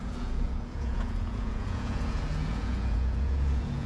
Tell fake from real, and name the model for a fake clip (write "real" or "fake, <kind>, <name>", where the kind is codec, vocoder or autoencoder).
fake, vocoder, Vocos